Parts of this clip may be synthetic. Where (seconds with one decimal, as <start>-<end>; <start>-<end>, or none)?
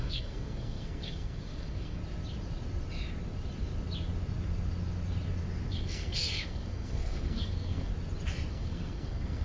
0.0-2.0; 5.7-7.9; 8.5-9.4